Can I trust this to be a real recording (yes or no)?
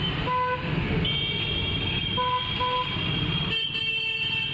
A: yes